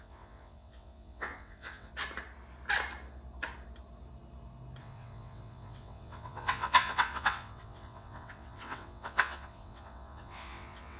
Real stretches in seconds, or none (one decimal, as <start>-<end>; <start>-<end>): 1.9-4.8